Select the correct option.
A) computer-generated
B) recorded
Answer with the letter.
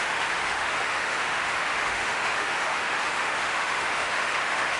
A